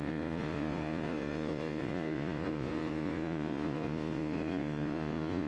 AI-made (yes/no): yes